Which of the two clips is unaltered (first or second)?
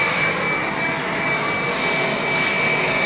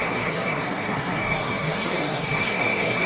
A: first